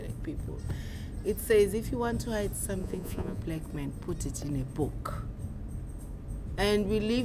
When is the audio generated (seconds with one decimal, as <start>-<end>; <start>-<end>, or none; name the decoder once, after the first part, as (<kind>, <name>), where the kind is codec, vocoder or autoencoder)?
2.8-3.4 (vocoder, Vocos)